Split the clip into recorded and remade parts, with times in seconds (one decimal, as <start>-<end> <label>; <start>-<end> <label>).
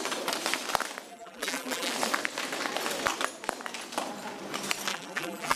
0.0-1.1 recorded; 1.1-1.9 remade; 1.9-4.9 recorded; 4.9-5.6 remade